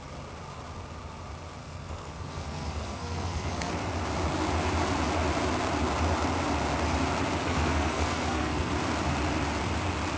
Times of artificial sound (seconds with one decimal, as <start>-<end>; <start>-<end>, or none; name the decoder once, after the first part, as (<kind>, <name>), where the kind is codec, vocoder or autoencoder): 1.6-3.7 (codec, SNAC); 7.4-8.7